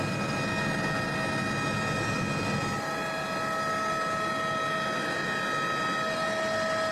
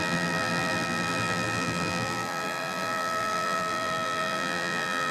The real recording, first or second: first